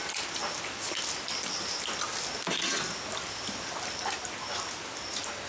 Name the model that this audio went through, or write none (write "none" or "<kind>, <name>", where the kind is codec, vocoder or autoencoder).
none